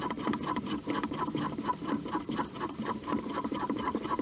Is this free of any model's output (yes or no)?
no